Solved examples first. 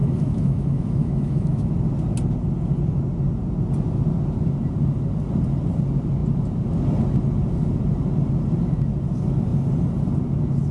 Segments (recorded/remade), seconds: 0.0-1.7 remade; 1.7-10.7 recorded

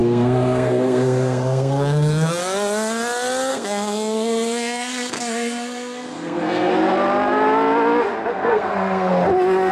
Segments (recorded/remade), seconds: 0.0-2.4 remade; 2.4-3.5 recorded; 3.5-6.7 remade; 6.7-8.3 recorded; 8.3-9.1 remade; 9.1-9.7 recorded

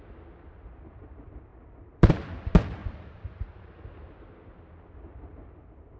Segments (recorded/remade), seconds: 0.0-1.5 recorded; 1.5-2.1 remade; 2.1-2.8 recorded; 2.8-3.5 remade; 3.5-6.0 recorded

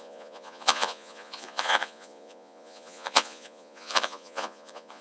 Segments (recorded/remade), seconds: 0.0-5.0 remade

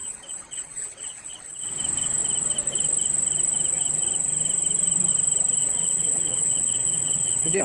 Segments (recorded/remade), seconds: 0.0-1.7 remade; 1.7-5.6 recorded; 5.6-7.6 remade

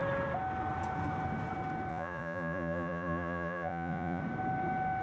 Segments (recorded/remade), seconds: 0.0-1.9 recorded; 1.9-4.2 remade; 4.2-5.0 recorded